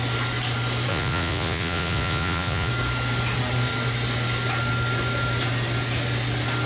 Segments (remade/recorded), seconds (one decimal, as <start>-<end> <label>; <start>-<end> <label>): 0.0-0.9 recorded; 0.9-2.7 remade; 2.7-6.7 recorded